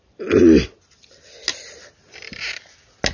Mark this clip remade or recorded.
recorded